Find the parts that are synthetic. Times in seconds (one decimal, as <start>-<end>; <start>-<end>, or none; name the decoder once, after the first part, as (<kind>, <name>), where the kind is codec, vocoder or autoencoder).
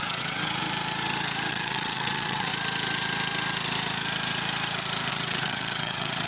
0.0-0.6 (vocoder, WaveNeXt); 1.5-2.5; 5.1-6.3